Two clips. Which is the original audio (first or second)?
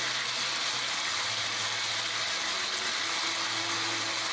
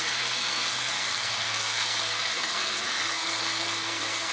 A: first